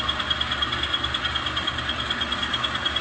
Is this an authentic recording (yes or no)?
yes